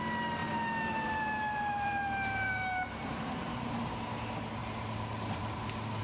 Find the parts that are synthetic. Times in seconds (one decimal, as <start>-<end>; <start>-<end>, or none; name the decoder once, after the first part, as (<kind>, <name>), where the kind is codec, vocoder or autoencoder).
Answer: 0.4-4.0 (vocoder, BigVGAN v2)